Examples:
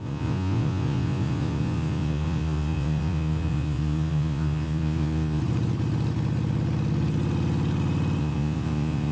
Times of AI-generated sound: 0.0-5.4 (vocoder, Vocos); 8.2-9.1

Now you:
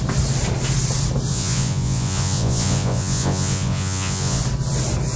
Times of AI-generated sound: 1.3-4.4 (vocoder, Vocos)

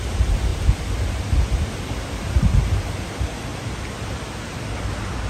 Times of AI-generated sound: none

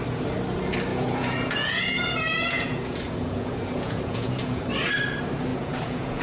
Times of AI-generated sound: 0.9-4.6 (vocoder, Vocos); 5.5-6.2

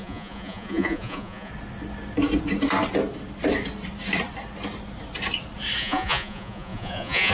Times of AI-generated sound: 0.0-1.5 (vocoder, Vocos); 5.8-7.3

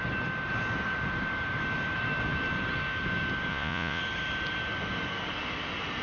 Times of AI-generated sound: 3.5-4.0 (vocoder, Vocos)

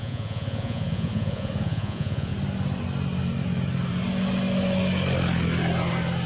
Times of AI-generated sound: 0.0-2.3 (vocoder, Vocos)